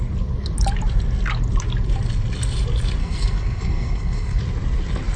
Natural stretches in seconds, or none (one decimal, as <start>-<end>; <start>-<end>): 0.0-3.0; 4.4-5.2